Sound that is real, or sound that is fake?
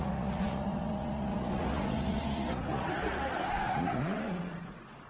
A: fake